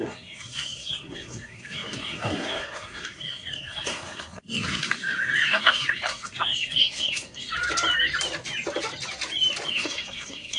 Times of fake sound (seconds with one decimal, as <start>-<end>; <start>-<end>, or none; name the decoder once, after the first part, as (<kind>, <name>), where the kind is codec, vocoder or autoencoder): 0.0-7.5 (codec, SNAC); 9.7-10.6